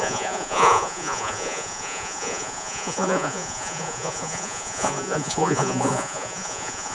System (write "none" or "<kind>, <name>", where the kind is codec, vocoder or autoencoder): vocoder, Vocos